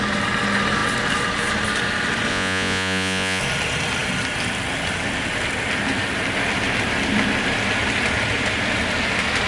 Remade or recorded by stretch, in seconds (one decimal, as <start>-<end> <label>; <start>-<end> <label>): 0.0-2.3 recorded; 2.3-3.4 remade; 3.4-9.5 recorded